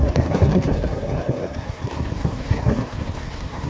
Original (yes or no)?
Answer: no